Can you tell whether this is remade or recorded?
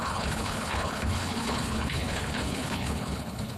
remade